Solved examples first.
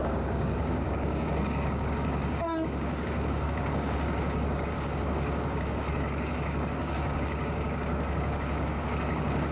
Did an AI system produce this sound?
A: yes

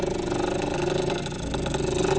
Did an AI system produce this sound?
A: no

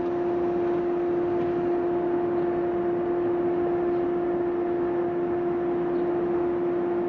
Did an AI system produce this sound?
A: no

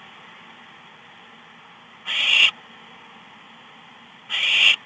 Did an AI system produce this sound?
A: no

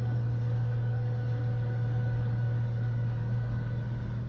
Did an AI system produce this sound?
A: yes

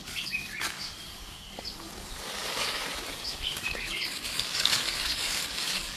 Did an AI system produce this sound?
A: yes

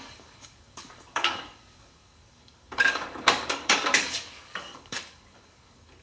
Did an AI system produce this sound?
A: yes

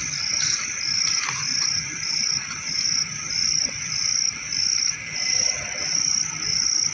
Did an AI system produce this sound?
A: no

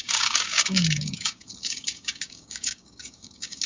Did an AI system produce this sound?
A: yes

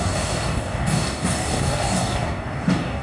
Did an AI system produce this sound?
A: yes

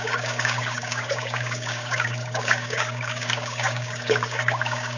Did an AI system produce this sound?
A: yes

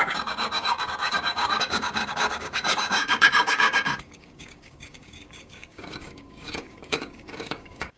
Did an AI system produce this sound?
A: yes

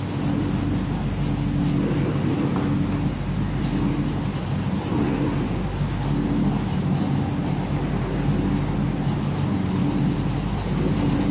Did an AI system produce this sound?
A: no